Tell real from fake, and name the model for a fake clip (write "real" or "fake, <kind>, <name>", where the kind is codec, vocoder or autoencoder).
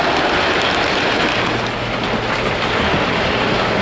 real